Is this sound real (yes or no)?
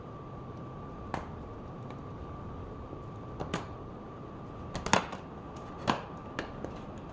yes